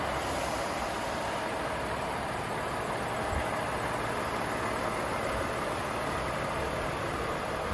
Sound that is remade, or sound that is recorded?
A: recorded